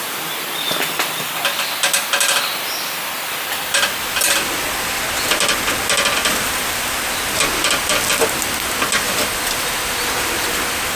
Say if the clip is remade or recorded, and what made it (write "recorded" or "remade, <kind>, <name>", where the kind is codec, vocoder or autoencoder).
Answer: recorded